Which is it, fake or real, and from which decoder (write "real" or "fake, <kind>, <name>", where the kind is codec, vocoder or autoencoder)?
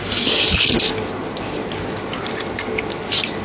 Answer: real